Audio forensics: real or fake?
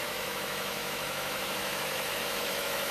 fake